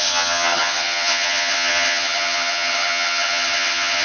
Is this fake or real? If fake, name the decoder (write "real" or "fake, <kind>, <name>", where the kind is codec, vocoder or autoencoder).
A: fake, vocoder, HiFi-GAN